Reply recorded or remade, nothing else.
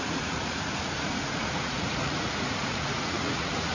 remade